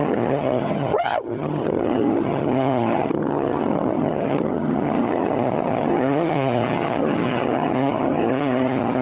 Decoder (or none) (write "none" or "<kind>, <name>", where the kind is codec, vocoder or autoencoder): vocoder, HiFi-GAN